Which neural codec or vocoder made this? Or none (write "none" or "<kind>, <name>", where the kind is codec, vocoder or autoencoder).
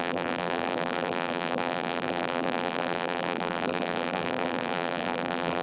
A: vocoder, BigVGAN v2